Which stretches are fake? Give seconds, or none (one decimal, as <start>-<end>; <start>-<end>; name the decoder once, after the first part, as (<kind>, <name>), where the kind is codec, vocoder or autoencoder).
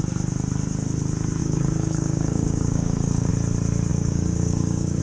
1.4-3.3 (codec, DAC); 3.9-5.0